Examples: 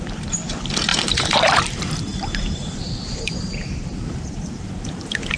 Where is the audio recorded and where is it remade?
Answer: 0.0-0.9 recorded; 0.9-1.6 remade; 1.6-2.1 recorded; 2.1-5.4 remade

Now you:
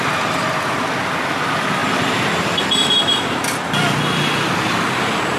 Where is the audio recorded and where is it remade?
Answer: 0.0-5.4 recorded

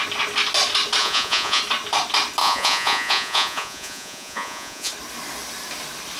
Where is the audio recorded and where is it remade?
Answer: 0.0-1.0 recorded; 1.0-1.6 remade; 1.6-2.4 recorded; 2.4-4.9 remade; 4.9-6.2 recorded

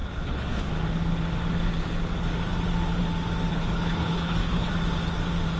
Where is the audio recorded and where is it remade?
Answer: 0.0-0.7 remade; 0.7-3.5 recorded; 3.5-4.7 remade; 4.7-5.6 recorded

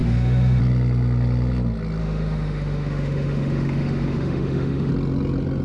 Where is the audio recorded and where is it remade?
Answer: 0.0-0.6 remade; 0.6-2.0 recorded; 2.0-4.9 remade; 4.9-5.6 recorded

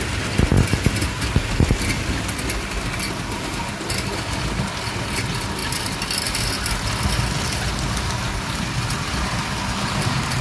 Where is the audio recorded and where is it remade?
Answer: 0.0-10.4 recorded

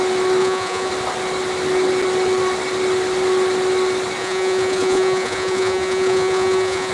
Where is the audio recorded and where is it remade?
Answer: 0.0-0.4 recorded; 0.4-0.9 remade; 0.9-4.2 recorded; 4.2-6.9 remade